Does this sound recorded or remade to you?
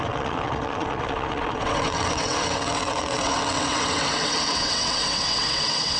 remade